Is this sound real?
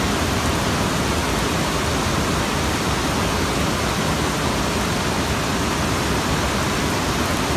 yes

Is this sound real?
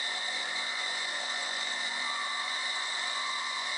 no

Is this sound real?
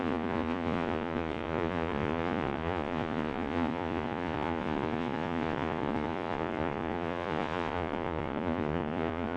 no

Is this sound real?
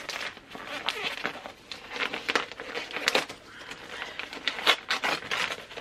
yes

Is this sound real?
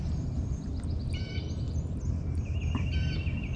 yes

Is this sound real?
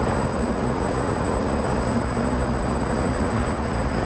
no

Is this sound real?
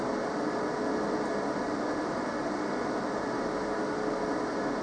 yes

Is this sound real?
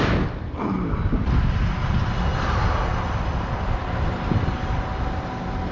yes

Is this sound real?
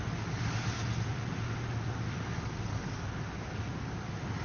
yes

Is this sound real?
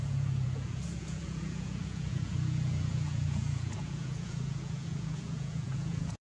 no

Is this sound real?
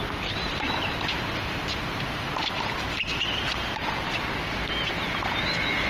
yes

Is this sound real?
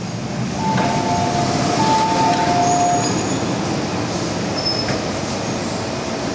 yes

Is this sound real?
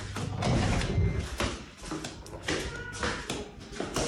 yes